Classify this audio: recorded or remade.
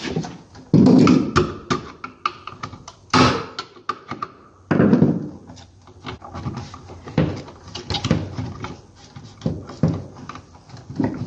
recorded